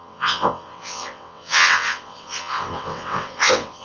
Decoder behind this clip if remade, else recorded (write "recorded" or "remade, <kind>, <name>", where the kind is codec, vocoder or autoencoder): remade, vocoder, WaveNeXt